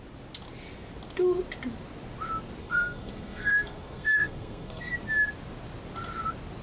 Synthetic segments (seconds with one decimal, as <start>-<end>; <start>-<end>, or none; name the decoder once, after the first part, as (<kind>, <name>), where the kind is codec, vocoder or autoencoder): 2.6-4.9 (codec, SNAC)